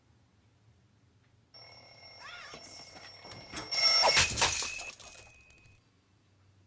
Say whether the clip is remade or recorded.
recorded